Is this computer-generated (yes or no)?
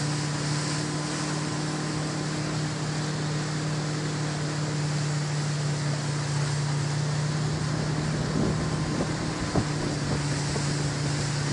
no